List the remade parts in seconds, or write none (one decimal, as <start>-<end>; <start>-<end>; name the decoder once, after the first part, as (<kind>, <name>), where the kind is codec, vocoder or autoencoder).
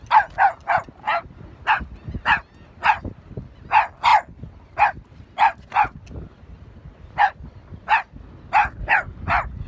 none